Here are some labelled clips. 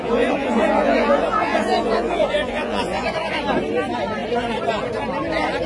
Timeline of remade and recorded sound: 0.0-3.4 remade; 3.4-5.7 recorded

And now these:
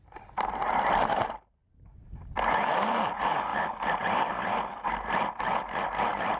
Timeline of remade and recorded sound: 0.0-6.4 recorded

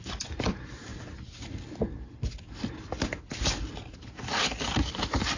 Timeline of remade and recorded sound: 0.0-5.4 recorded

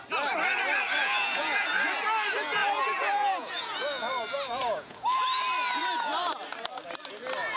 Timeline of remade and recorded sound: 0.0-1.0 recorded; 1.0-1.7 remade; 1.7-2.6 recorded; 2.6-5.2 remade; 5.2-7.6 recorded

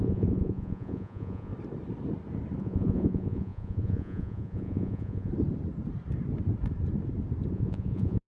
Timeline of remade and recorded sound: 0.0-1.5 remade; 1.5-2.6 recorded; 2.6-5.3 remade; 5.3-7.5 recorded; 7.5-8.3 remade

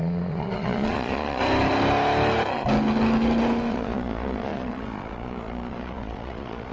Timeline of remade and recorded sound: 0.0-1.4 remade; 1.4-3.7 recorded; 3.7-6.7 remade

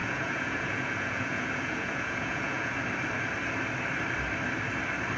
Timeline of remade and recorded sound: 0.0-2.7 remade; 2.7-5.2 recorded